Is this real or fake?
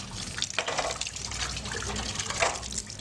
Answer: real